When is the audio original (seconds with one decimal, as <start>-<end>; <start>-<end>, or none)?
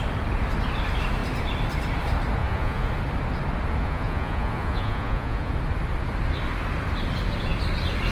0.0-2.4; 2.9-3.8; 5.5-8.1